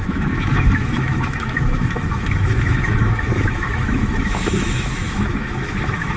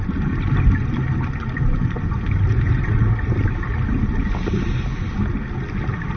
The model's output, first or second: first